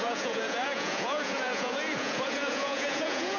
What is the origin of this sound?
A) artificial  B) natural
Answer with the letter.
A